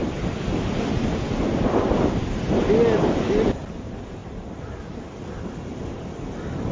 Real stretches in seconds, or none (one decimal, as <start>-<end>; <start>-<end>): 0.0-4.2; 5.2-6.7